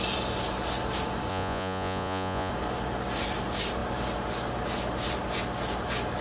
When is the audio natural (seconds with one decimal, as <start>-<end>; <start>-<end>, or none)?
0.0-1.3; 2.5-6.2